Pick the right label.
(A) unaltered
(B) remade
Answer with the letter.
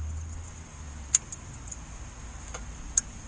A